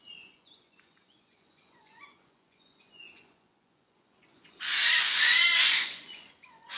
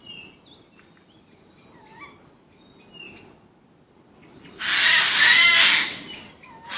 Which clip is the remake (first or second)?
first